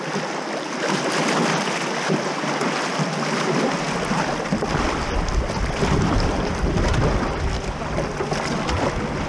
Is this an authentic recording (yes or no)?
yes